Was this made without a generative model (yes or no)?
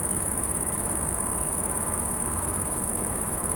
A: no